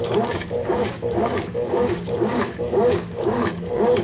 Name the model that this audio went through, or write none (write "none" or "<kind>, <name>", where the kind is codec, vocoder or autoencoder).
codec, DAC